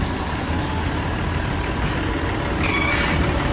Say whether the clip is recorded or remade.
recorded